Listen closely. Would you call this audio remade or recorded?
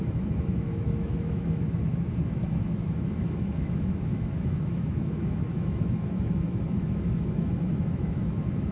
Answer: remade